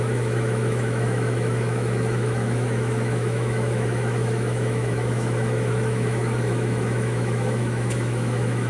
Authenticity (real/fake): fake